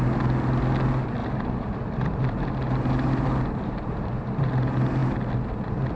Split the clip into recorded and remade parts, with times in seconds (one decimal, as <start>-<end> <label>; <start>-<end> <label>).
0.0-1.2 recorded; 1.2-4.5 remade; 4.5-6.0 recorded